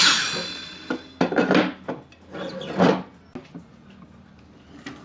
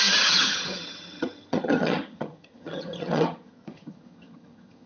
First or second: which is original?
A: first